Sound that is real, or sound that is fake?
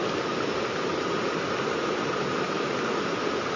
real